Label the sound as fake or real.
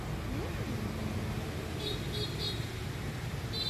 real